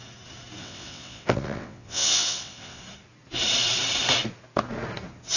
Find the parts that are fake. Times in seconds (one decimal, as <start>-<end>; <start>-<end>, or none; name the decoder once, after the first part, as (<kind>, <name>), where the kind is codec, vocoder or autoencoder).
0.6-2.8 (vocoder, WaveNeXt)